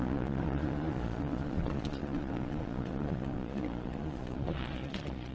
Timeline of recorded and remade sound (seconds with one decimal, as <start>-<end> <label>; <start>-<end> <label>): 0.0-5.3 remade